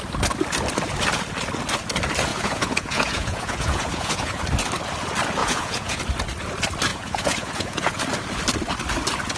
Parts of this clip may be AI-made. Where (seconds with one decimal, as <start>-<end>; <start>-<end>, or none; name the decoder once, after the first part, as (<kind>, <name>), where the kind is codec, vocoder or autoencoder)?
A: 2.3-4.4 (vocoder, Vocos); 5.4-6.0; 6.9-8.0